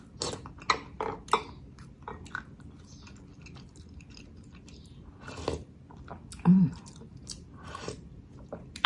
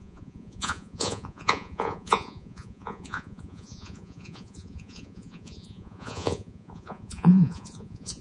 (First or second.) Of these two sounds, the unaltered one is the first